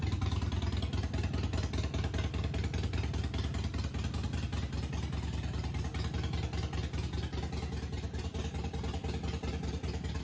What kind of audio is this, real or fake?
real